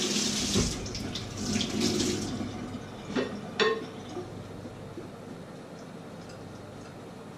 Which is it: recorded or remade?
recorded